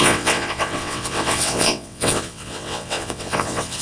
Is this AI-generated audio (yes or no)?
yes